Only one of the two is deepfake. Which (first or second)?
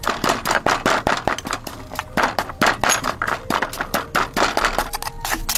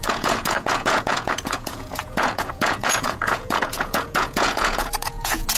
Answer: second